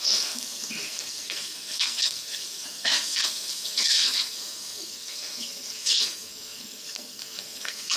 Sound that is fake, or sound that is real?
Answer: fake